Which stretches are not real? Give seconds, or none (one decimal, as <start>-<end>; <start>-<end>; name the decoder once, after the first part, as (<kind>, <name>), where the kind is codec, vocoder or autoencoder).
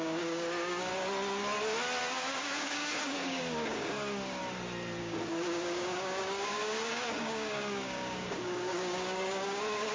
0.0-0.9 (codec, DAC); 2.0-4.4; 5.0-9.9